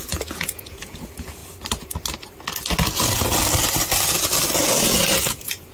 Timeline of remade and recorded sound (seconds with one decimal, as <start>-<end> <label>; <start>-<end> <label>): 0.0-1.4 remade; 1.4-4.8 recorded; 4.8-5.7 remade